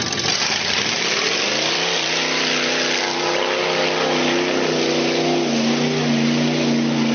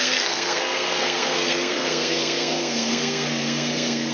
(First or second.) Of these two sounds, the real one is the first